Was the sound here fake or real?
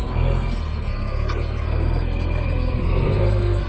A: fake